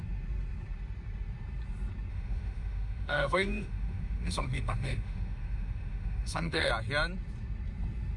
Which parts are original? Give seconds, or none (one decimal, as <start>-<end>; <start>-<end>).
0.0-2.1; 6.7-8.2